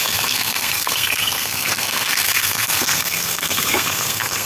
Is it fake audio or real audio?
fake